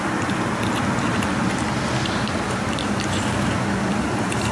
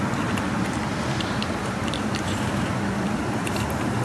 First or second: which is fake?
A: second